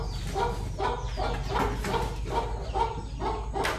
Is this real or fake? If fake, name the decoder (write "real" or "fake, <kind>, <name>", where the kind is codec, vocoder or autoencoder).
real